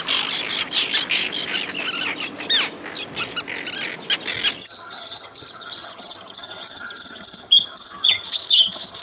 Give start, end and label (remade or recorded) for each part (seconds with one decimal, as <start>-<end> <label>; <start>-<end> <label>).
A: 0.0-4.6 recorded; 4.6-9.0 remade

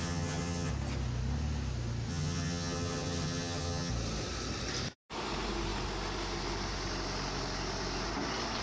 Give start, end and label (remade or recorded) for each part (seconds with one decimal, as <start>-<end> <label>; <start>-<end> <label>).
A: 0.0-0.7 remade; 0.7-2.1 recorded; 2.1-3.9 remade; 3.9-8.6 recorded

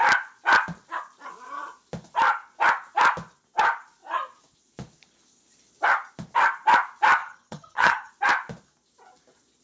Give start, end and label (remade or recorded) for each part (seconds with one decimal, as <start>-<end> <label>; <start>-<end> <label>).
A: 0.0-7.2 recorded; 7.2-8.1 remade; 8.1-9.6 recorded

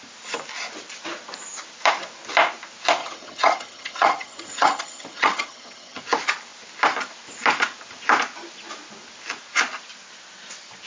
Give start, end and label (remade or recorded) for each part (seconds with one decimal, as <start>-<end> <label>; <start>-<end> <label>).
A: 0.0-3.0 recorded; 3.0-6.0 remade; 6.0-10.9 recorded